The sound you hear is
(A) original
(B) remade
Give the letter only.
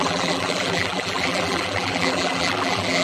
B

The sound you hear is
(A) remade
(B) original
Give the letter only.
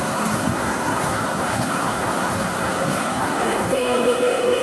A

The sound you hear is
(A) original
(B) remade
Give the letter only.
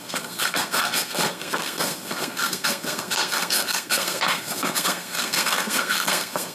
B